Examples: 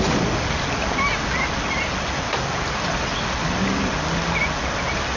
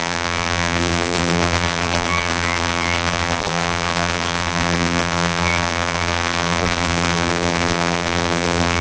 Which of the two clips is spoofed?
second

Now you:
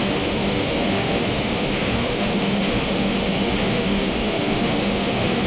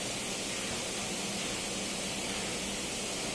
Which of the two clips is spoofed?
first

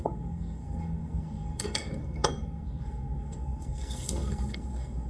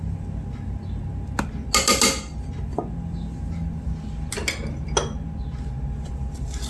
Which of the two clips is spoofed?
first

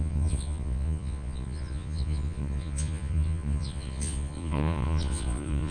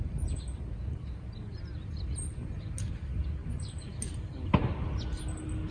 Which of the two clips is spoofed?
first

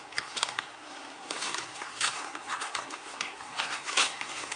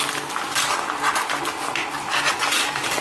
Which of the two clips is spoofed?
first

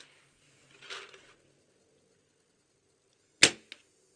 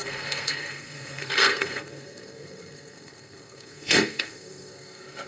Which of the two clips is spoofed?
second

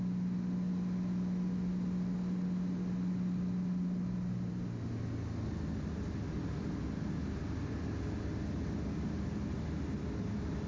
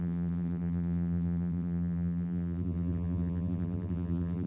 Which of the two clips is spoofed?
second